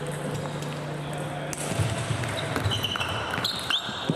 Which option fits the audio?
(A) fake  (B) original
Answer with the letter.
B